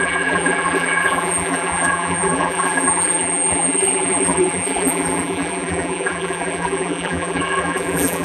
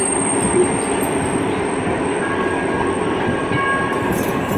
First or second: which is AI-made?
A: first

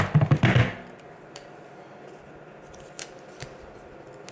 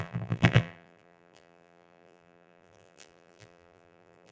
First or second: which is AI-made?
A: second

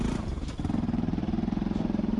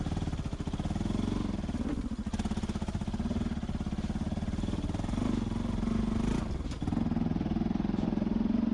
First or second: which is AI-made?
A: first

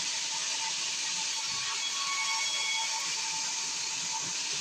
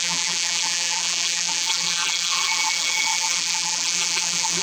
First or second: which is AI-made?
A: second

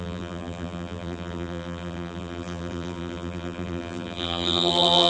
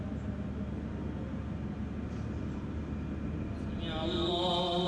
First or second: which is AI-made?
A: first